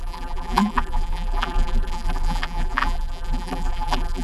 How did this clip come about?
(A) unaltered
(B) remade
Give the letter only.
B